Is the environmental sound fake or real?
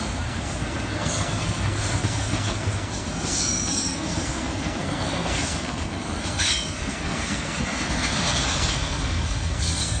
fake